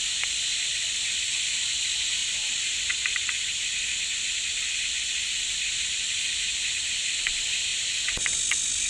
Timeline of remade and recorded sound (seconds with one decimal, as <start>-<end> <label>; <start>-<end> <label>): 0.0-8.9 recorded